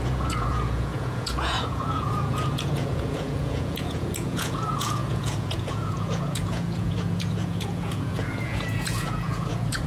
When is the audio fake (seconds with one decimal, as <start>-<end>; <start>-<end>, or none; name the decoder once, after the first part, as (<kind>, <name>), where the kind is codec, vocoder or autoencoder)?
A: 0.0-9.9 (vocoder, Vocos)